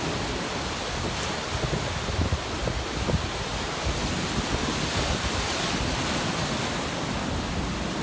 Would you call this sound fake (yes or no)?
no